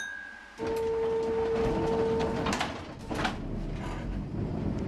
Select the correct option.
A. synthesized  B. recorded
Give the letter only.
B